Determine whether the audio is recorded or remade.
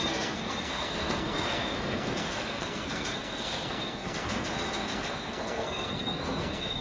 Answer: remade